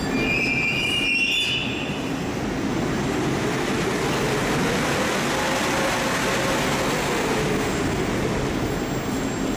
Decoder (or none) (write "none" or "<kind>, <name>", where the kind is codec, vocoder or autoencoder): none